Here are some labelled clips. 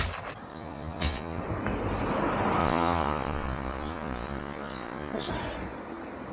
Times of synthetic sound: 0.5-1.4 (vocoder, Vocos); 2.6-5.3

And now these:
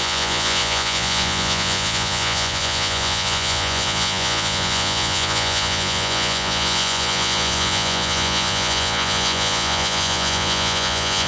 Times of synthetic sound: 0.0-11.3 (vocoder, Vocos)

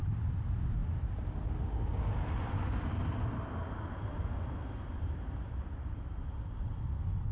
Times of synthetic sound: 4.9-6.7 (vocoder, BigVGAN v2)

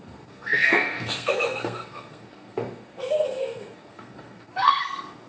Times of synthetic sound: 0.0-5.3 (codec, SNAC)